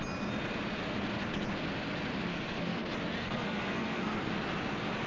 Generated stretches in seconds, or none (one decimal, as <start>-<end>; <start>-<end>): 2.3-2.8; 3.2-4.3